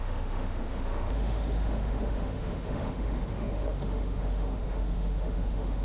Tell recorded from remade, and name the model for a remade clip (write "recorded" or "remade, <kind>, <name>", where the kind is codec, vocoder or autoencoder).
remade, autoencoder, DAC-VAE